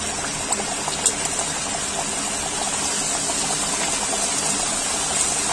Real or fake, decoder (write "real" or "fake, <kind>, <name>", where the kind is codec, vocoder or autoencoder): real